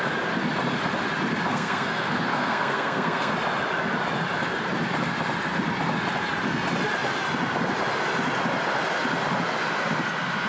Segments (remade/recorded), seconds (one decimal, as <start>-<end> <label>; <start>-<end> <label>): 0.0-1.5 recorded; 1.5-3.3 remade; 3.3-10.5 recorded